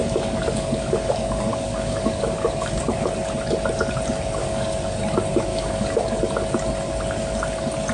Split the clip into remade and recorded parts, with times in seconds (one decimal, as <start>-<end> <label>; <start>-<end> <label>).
0.0-2.8 remade; 2.8-4.4 recorded; 4.4-5.0 remade; 5.0-5.5 recorded; 5.5-6.2 remade; 6.2-7.9 recorded